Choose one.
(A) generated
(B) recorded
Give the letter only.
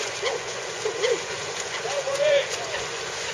A